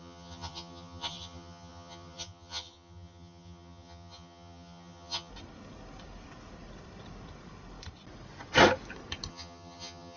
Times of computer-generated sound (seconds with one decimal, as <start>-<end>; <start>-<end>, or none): 0.0-5.3; 9.3-10.2